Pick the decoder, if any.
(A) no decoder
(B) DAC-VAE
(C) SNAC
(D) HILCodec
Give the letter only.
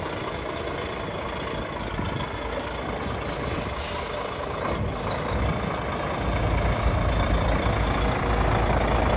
A